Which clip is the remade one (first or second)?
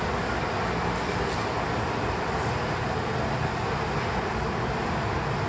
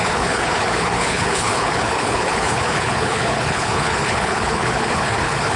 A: second